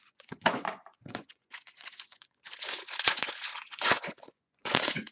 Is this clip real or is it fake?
fake